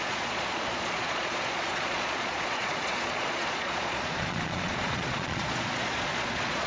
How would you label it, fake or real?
fake